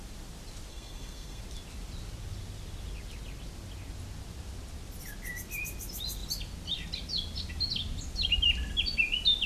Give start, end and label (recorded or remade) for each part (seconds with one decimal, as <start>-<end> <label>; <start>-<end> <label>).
0.0-0.7 recorded; 0.7-1.4 remade; 1.4-9.5 recorded